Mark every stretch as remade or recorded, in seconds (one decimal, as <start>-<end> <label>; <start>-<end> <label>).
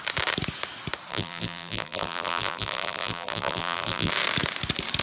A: 0.0-1.1 recorded; 1.1-4.1 remade; 4.1-5.0 recorded